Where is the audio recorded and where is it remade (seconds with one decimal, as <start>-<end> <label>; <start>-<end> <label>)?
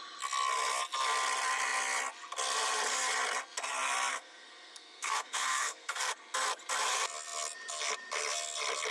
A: 0.0-4.1 recorded; 4.1-6.1 remade; 6.1-8.9 recorded